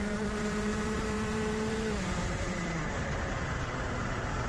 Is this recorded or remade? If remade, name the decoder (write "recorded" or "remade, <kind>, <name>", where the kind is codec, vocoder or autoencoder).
remade, vocoder, BigVGAN v2